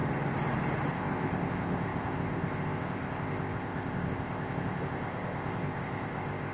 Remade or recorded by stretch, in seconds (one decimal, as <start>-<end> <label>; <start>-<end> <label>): 0.0-0.9 recorded; 0.9-6.5 remade